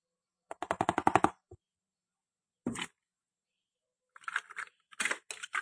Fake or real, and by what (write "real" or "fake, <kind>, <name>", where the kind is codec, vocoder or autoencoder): real